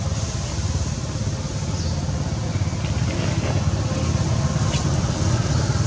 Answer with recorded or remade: recorded